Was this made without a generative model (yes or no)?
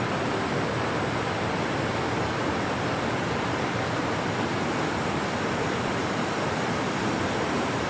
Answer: yes